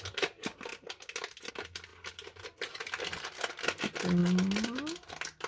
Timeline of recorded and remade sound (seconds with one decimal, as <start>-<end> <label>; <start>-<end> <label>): 0.0-5.5 recorded